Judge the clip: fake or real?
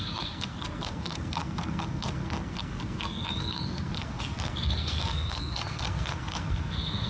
fake